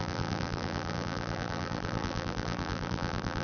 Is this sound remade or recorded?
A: remade